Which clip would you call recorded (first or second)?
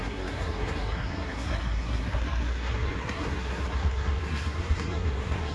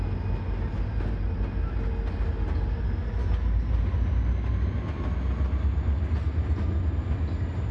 second